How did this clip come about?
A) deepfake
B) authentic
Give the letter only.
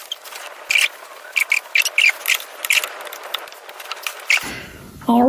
B